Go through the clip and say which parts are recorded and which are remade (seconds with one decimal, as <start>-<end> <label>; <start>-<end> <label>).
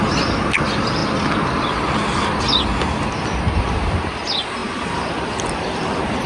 0.0-6.3 recorded